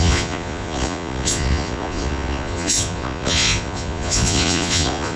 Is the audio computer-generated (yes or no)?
yes